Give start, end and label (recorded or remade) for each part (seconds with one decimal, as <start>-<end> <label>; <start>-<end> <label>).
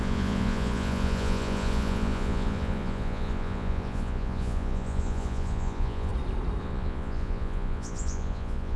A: 0.0-6.1 remade; 6.1-6.6 recorded; 6.6-8.8 remade